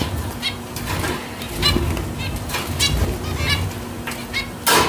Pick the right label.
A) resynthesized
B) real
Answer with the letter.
B